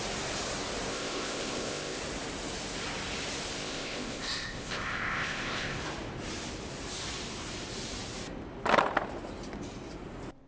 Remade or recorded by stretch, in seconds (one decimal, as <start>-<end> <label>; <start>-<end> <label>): 0.0-0.9 recorded; 0.9-2.0 remade; 2.0-3.6 recorded; 3.6-5.8 remade; 5.8-10.5 recorded

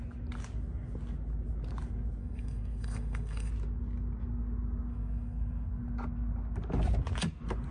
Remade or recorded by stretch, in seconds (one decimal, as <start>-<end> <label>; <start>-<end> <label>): 0.0-2.2 recorded; 2.2-3.5 remade; 3.5-4.9 recorded; 4.9-5.8 remade; 5.8-7.7 recorded

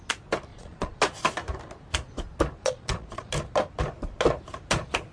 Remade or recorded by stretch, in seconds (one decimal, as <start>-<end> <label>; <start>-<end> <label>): 0.0-0.5 recorded; 0.5-1.0 remade; 1.0-2.6 recorded; 2.6-3.3 remade; 3.3-5.1 recorded

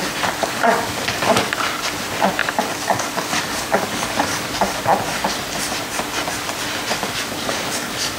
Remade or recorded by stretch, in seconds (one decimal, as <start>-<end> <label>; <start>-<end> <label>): 0.0-0.4 recorded; 0.4-1.5 remade; 1.5-2.4 recorded; 2.4-4.8 remade; 4.8-6.9 recorded; 6.9-8.2 remade

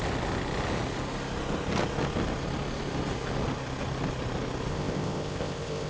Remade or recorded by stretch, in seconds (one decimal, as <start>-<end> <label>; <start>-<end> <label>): 0.0-4.7 recorded; 4.7-5.9 remade

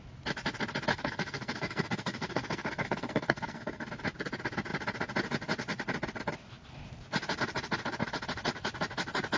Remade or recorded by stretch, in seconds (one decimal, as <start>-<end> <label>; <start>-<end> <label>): 0.0-0.9 recorded; 0.9-3.9 remade; 3.9-9.4 recorded

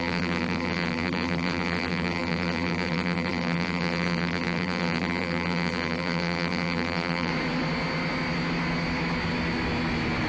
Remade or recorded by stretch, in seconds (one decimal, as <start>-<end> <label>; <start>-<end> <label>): 0.0-7.3 remade; 7.3-10.3 recorded